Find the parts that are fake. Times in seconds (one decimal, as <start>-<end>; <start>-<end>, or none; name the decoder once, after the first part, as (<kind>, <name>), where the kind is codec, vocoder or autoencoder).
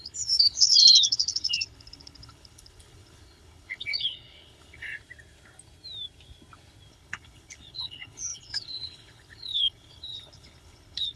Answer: 0.0-4.9 (codec, HILCodec); 6.9-11.2